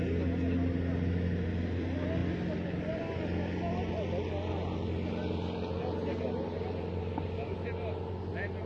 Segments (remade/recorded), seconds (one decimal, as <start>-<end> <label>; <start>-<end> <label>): 0.0-8.7 recorded